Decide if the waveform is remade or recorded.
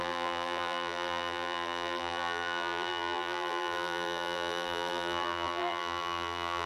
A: remade